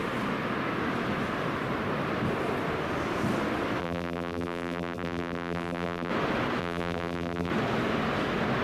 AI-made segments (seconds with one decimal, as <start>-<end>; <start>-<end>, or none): 3.8-6.1; 6.6-7.5